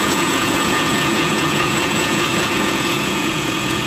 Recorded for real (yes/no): no